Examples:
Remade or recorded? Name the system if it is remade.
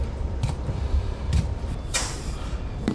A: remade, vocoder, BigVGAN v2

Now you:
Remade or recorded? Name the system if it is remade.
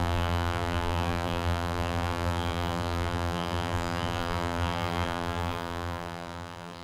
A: remade, vocoder, BigVGAN v2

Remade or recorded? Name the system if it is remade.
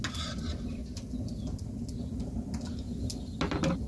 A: recorded